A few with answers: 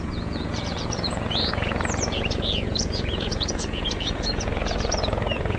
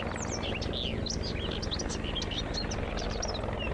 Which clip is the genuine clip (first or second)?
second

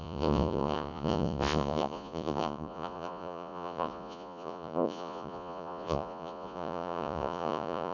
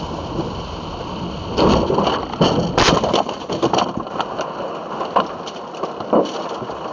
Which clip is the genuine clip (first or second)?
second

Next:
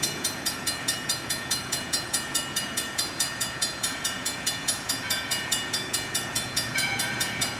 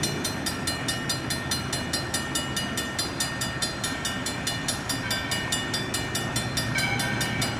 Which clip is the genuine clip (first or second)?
second